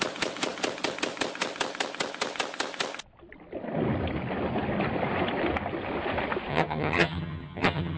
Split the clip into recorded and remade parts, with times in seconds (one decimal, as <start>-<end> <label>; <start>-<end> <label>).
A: 0.0-6.5 recorded; 6.5-8.0 remade